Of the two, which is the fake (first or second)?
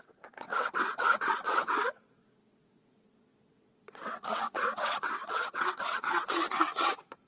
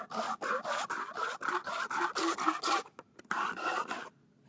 first